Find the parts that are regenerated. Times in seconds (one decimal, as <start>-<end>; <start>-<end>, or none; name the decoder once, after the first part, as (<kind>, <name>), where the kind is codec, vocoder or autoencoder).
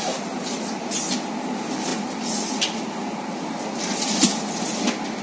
none